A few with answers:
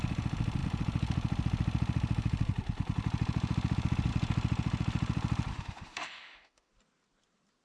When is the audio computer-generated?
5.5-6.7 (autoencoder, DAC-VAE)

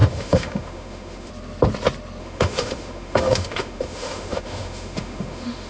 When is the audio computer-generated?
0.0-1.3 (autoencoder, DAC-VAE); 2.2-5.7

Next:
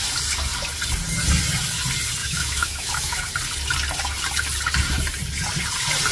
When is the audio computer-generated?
2.2-3.3 (autoencoder, DAC-VAE)

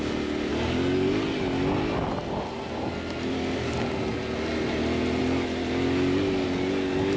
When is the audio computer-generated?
none

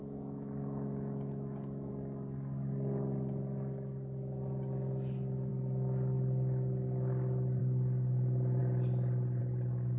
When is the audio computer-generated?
0.0-1.9 (autoencoder, DAC-VAE)

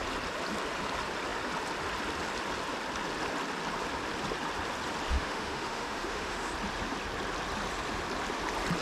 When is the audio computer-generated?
5.1-6.5 (autoencoder, DAC-VAE)